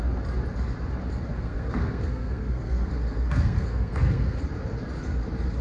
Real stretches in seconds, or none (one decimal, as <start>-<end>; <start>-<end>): 0.0-1.3; 4.4-5.6